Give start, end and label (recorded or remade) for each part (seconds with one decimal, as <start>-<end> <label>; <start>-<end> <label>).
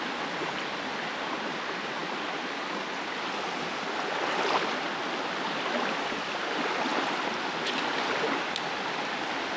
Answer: 0.0-9.6 recorded